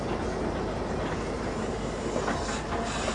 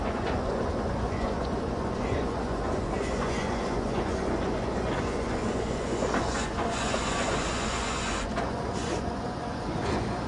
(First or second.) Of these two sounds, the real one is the first